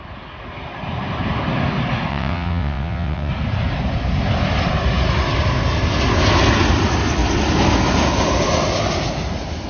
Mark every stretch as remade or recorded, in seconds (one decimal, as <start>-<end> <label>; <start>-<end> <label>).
0.0-2.1 recorded; 2.1-3.3 remade; 3.3-9.7 recorded